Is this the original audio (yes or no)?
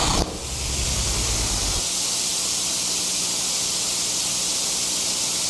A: yes